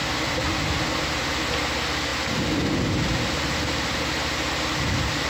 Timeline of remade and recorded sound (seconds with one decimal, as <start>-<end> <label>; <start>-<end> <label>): 0.0-0.6 remade; 0.6-5.3 recorded